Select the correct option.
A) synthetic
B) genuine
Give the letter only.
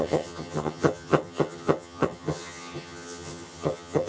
A